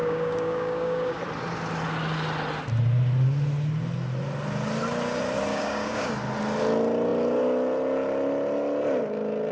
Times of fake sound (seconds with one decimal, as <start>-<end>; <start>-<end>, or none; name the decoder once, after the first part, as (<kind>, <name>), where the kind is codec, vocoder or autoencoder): 0.0-1.2 (codec, DAC); 5.5-6.1